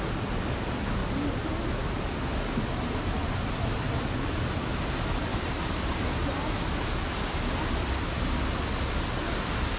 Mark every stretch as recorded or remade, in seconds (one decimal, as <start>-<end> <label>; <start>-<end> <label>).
0.0-3.2 recorded; 3.2-4.7 remade; 4.7-5.3 recorded; 5.3-6.5 remade; 6.5-9.8 recorded